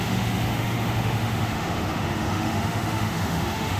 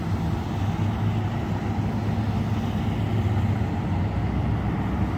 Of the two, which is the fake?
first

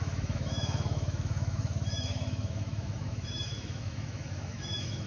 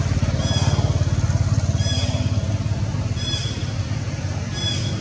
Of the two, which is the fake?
first